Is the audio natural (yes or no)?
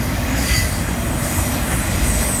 no